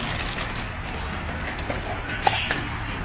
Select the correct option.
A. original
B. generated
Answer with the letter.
A